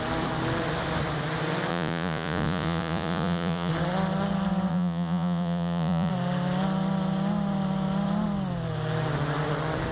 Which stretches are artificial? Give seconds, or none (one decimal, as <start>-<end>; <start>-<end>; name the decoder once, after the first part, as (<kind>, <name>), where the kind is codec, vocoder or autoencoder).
1.7-3.7 (vocoder, Vocos); 4.7-6.1